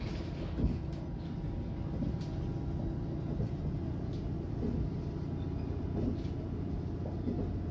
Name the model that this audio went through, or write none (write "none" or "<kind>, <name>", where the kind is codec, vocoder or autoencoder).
none